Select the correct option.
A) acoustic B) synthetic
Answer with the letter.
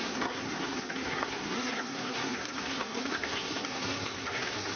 B